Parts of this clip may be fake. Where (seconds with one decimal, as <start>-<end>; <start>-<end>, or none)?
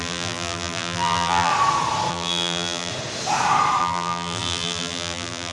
0.0-1.5; 2.1-2.9; 3.8-5.5